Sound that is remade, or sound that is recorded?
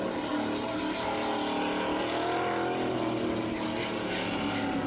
recorded